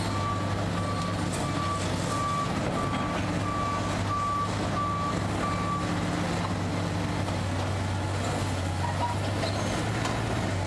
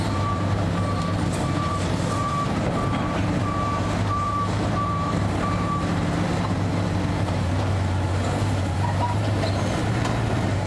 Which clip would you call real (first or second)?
first